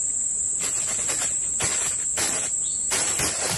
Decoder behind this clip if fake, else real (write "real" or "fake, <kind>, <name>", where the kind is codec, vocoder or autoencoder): real